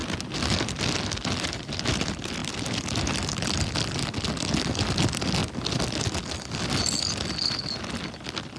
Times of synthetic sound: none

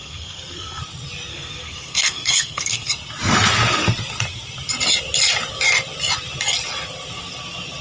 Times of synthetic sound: 0.0-0.8; 1.3-2.9

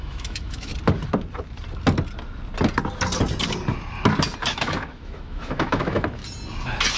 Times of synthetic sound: 0.0-0.7; 4.5-6.2

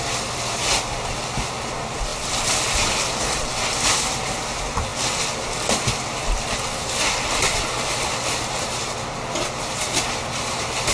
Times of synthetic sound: none

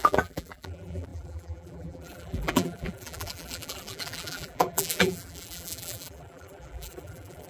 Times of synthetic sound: 0.0-7.5

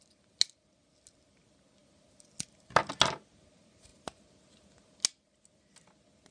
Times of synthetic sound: none

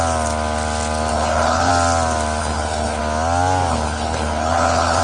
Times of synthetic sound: 1.1-1.7; 2.4-3.0; 3.7-5.0